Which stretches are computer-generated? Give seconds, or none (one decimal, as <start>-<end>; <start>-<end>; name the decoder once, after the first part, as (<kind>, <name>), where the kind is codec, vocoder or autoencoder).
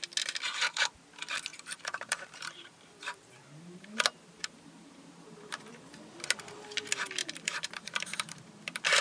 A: 1.5-5.7 (vocoder, BigVGAN v2); 7.2-8.4